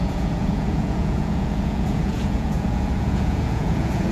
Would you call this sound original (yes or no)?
no